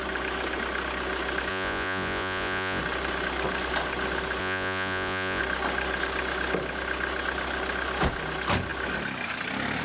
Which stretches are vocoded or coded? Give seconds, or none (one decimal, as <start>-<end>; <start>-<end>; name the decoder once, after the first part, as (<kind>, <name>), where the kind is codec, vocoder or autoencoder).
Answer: 1.5-2.8 (vocoder, Vocos); 4.4-5.4